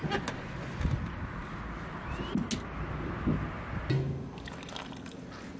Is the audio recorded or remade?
recorded